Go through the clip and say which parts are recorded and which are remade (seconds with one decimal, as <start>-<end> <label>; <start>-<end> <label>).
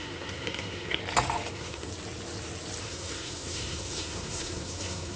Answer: 0.0-1.0 remade; 1.0-1.5 recorded; 1.5-1.9 remade; 1.9-2.8 recorded; 2.8-5.2 remade